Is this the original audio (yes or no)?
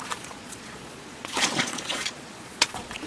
no